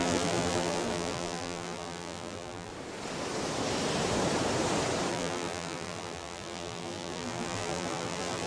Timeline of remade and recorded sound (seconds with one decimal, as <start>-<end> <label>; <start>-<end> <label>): 0.0-2.7 remade; 2.7-5.1 recorded; 5.1-8.5 remade